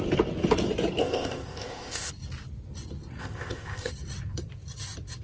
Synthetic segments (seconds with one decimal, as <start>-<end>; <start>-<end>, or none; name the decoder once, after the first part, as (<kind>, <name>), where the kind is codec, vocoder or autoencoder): 1.0-2.1 (codec, ZipCodec); 3.2-3.9